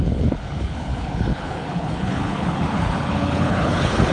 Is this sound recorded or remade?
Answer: remade